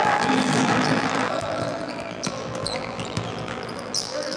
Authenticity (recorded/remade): remade